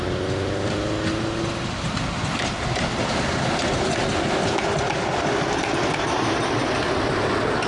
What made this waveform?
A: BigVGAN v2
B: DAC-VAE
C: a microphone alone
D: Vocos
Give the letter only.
C